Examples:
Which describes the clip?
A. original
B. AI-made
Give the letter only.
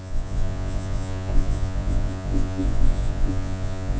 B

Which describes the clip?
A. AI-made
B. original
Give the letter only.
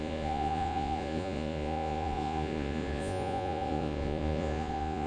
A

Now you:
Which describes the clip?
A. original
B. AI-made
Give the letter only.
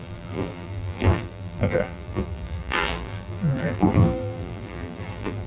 B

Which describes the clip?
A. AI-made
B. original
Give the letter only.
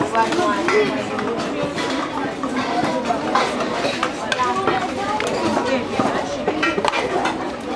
B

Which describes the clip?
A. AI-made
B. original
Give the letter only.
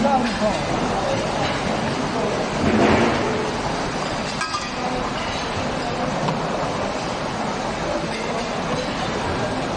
B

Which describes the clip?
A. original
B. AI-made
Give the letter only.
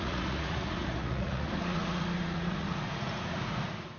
B